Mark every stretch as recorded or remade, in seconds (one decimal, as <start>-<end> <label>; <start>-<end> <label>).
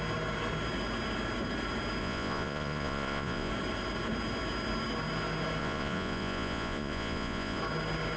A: 0.0-2.0 recorded; 2.0-3.5 remade; 3.5-5.6 recorded; 5.6-7.6 remade; 7.6-8.2 recorded